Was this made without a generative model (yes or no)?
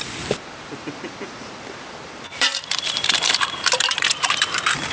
no